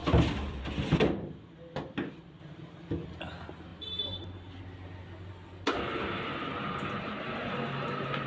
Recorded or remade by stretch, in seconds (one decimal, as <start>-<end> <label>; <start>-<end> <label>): 0.0-8.3 recorded